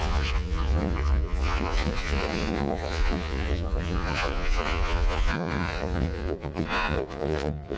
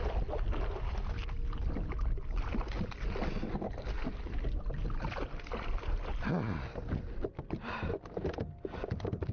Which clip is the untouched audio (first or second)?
second